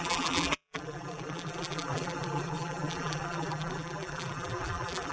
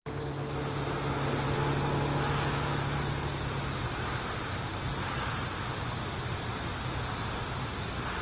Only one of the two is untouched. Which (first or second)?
second